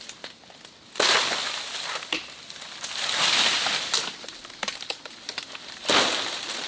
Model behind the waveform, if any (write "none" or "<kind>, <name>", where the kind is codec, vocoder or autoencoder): none